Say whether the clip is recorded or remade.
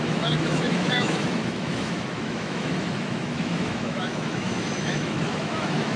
remade